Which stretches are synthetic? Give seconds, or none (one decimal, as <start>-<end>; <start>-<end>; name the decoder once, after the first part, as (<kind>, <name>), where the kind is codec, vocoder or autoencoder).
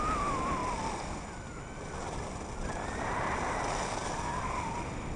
none